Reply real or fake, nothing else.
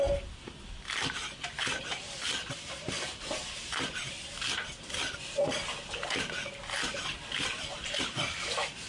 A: fake